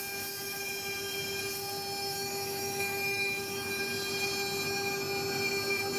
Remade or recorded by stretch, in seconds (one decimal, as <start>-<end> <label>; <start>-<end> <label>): 0.0-2.0 recorded; 2.0-3.8 remade; 3.8-6.0 recorded